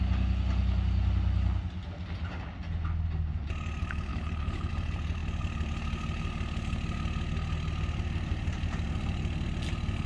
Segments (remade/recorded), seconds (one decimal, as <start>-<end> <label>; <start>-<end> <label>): 0.0-4.1 recorded; 4.1-4.7 remade; 4.7-10.1 recorded